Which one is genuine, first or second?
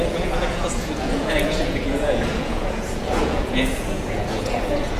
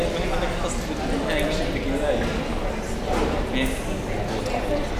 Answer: second